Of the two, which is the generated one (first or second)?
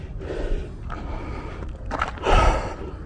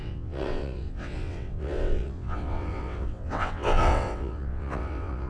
second